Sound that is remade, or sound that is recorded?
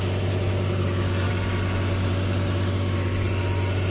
recorded